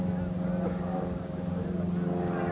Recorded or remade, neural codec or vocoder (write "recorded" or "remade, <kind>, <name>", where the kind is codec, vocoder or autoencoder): recorded